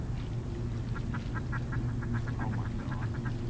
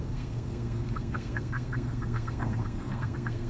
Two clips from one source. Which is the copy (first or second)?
second